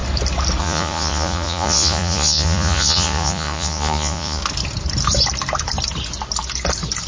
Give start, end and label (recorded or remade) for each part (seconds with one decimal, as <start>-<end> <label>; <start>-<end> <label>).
0.0-0.6 recorded; 0.6-4.4 remade; 4.4-7.1 recorded

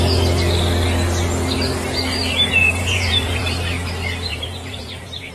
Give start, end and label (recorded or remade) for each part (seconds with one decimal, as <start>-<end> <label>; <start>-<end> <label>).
0.0-2.6 recorded; 2.6-3.4 remade; 3.4-4.3 recorded; 4.3-5.3 remade